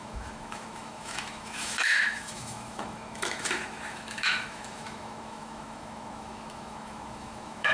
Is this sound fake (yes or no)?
yes